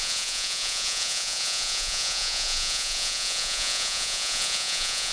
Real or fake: fake